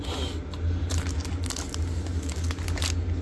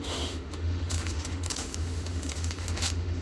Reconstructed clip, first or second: second